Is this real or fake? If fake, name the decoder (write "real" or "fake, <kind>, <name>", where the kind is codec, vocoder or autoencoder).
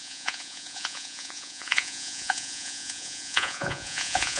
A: fake, vocoder, Vocos